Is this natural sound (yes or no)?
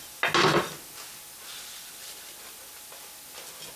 yes